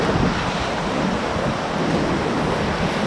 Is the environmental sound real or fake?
real